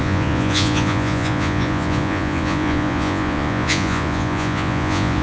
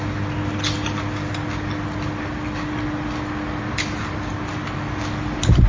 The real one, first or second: second